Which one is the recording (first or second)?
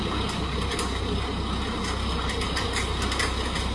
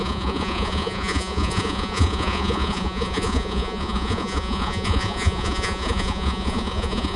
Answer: first